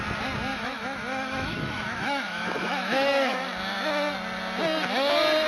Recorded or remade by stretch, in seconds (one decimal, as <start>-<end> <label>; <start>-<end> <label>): 0.0-0.5 recorded; 0.5-3.4 remade; 3.4-5.5 recorded